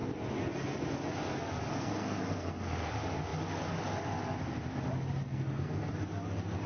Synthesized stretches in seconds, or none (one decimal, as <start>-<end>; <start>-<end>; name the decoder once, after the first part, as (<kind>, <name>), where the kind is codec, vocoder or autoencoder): 1.7-2.9 (codec, SNAC); 5.2-5.9